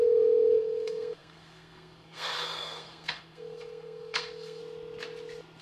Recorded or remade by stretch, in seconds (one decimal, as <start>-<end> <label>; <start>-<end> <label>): 0.0-4.6 remade; 4.6-5.6 recorded